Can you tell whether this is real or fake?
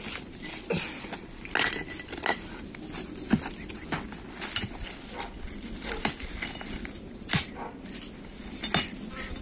real